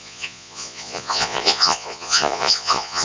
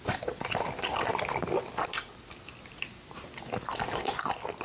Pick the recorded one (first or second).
second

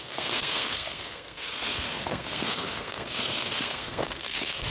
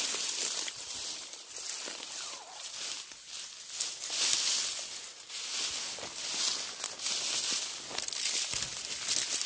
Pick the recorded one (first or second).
second